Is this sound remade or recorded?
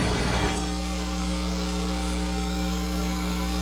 remade